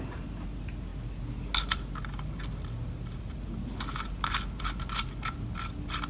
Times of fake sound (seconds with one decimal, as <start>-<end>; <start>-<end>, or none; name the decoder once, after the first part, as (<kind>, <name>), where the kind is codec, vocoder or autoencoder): none